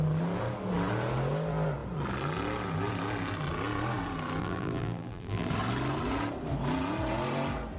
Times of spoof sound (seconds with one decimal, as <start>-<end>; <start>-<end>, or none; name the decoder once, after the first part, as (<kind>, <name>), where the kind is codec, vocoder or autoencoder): 4.4-5.5 (vocoder, BigVGAN v2)